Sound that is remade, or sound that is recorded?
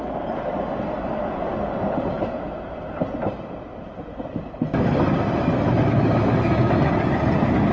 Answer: recorded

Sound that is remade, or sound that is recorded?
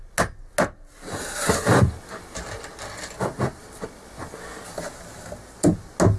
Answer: recorded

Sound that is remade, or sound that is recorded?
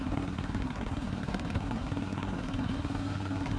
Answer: remade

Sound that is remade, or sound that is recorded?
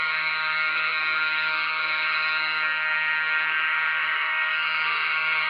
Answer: remade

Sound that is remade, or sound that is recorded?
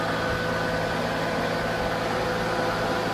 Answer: recorded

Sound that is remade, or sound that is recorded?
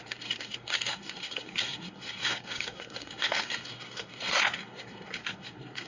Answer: remade